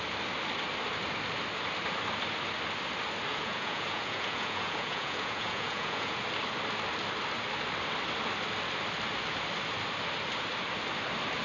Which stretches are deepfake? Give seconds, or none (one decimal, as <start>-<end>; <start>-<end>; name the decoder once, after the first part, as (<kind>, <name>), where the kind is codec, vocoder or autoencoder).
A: 3.3-6.2 (vocoder, Vocos)